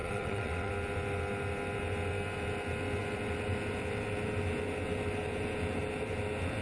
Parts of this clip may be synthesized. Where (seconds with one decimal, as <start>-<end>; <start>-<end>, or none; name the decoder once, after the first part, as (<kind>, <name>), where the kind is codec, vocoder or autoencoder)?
0.0-0.7 (vocoder, WaveNeXt)